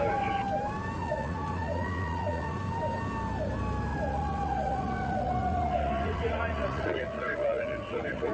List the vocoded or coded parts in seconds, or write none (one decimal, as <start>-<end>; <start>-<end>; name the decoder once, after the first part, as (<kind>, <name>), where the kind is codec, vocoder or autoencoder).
1.0-2.6 (vocoder, Vocos); 3.9-8.3